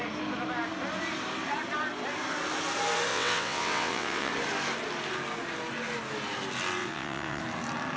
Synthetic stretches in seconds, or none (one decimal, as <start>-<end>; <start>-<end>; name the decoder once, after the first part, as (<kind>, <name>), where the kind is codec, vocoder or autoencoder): 3.1-4.3 (vocoder, WaveNeXt); 6.8-7.4